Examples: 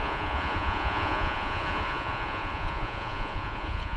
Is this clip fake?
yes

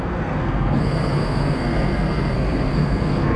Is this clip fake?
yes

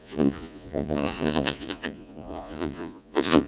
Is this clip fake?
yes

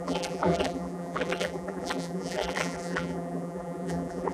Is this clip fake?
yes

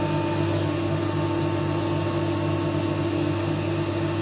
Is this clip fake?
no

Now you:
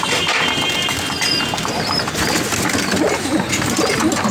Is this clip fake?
no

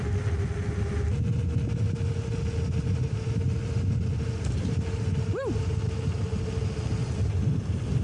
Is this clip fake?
no